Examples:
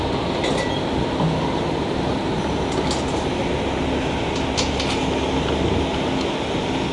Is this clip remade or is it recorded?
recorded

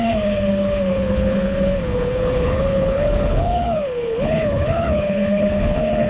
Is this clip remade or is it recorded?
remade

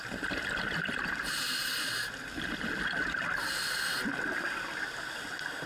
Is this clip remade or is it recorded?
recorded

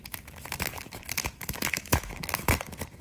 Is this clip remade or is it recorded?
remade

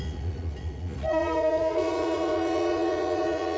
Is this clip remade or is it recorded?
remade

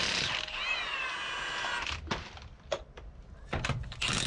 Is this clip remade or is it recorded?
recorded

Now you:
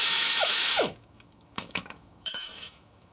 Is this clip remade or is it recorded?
remade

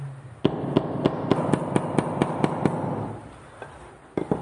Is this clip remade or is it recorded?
recorded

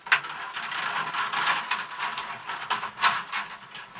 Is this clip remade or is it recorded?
recorded